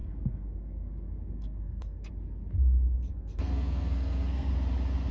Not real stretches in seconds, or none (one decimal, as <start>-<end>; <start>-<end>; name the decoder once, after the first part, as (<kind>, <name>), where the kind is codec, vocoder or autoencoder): 0.0-2.1 (codec, SNAC); 3.0-4.5